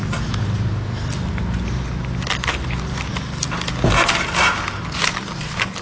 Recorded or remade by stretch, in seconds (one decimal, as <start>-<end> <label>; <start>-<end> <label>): 0.0-5.8 recorded